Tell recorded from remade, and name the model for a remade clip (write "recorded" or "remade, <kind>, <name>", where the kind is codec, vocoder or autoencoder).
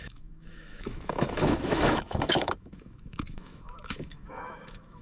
remade, autoencoder, DAC-VAE